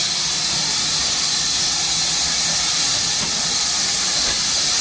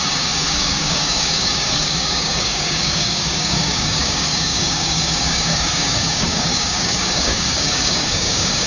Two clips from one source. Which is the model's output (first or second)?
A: second